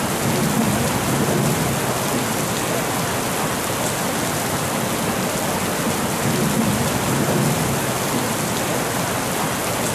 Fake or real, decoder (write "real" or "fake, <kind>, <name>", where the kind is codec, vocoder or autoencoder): real